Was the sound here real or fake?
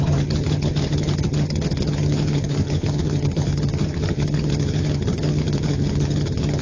fake